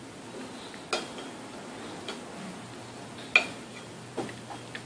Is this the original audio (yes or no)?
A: yes